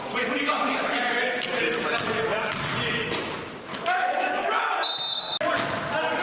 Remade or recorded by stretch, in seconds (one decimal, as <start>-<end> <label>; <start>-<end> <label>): 0.0-3.7 recorded; 3.7-4.6 remade; 4.6-6.2 recorded